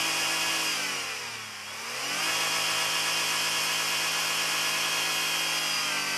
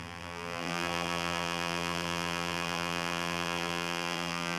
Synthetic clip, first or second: second